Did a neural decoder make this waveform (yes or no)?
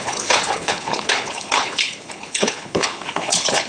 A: yes